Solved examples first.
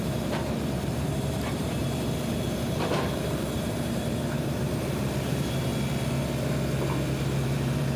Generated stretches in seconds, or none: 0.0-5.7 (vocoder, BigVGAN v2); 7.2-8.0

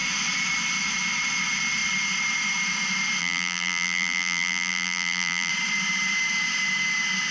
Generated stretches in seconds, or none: 3.2-5.5 (vocoder, BigVGAN v2)